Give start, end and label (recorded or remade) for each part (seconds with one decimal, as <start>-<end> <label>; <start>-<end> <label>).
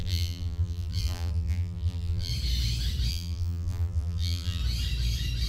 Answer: 0.0-2.3 remade; 2.3-3.1 recorded; 3.1-4.6 remade; 4.6-5.5 recorded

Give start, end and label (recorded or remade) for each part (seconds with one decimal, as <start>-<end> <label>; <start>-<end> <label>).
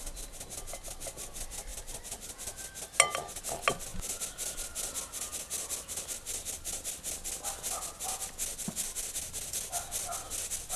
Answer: 0.0-8.5 recorded; 8.5-9.1 remade; 9.1-10.8 recorded